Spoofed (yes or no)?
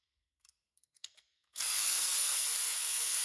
yes